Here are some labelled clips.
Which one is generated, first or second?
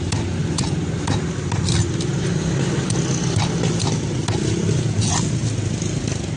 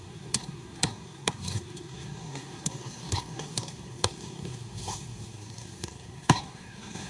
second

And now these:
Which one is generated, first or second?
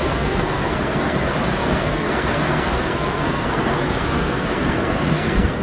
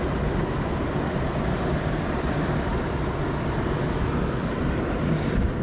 first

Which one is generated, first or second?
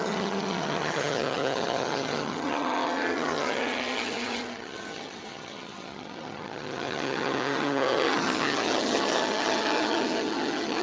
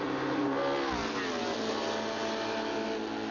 first